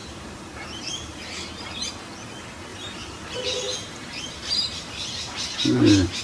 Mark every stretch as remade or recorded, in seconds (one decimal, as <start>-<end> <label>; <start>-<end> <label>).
0.0-1.9 remade; 1.9-2.7 recorded; 2.7-6.2 remade